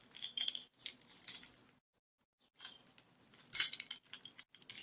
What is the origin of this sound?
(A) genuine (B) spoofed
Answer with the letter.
A